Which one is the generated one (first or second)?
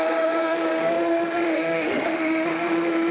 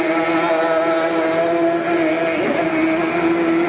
first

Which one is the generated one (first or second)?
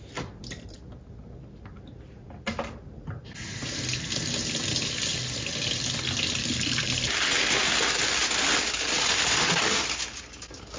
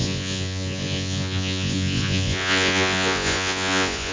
second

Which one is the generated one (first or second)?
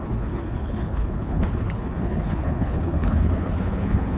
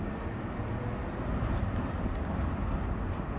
first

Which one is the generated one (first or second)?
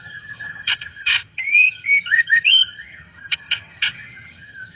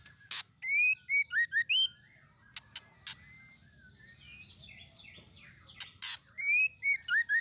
first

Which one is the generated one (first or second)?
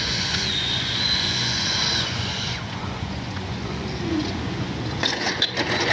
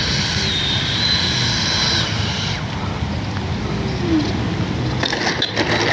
first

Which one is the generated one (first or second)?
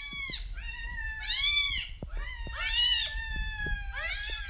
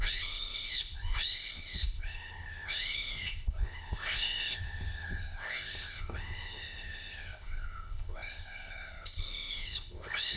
second